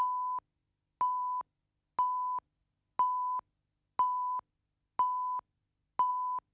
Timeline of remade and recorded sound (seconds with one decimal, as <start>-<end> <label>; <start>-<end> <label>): 0.0-6.5 recorded